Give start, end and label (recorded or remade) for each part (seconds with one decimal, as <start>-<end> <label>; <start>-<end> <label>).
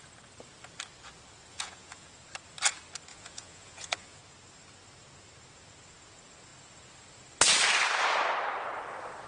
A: 0.0-1.5 recorded; 1.5-2.1 remade; 2.1-3.1 recorded; 3.1-4.2 remade; 4.2-9.3 recorded